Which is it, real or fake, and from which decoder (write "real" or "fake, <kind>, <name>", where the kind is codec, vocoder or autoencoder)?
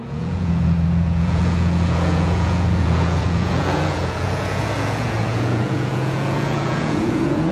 fake, vocoder, Vocos